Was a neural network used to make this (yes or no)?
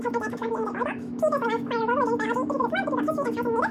yes